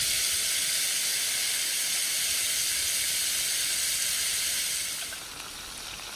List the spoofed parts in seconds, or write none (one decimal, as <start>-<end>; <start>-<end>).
none